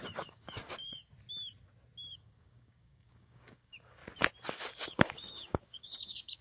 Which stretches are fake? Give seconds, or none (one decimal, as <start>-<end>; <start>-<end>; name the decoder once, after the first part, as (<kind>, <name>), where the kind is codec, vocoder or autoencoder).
0.0-1.1 (codec, DAC); 2.1-4.0; 4.5-6.4